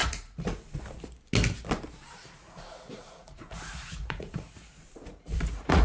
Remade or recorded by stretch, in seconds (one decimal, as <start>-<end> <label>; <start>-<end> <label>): 0.0-0.8 remade; 0.8-2.4 recorded; 2.4-5.8 remade